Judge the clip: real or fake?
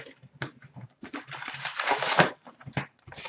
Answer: fake